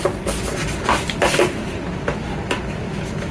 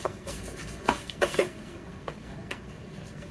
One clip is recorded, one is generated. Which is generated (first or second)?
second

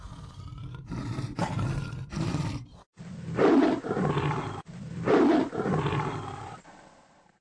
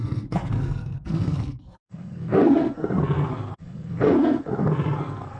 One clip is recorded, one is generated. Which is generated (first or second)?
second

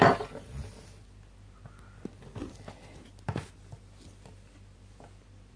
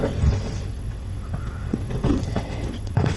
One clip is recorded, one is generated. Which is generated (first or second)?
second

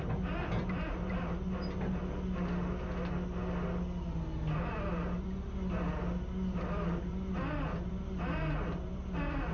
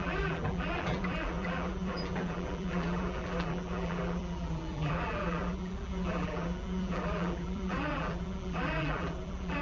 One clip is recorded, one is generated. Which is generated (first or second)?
second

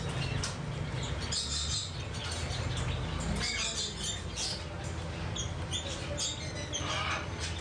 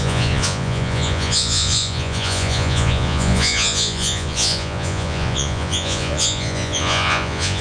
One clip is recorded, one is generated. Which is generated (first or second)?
second